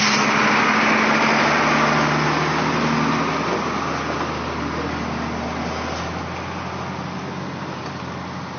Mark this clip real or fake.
real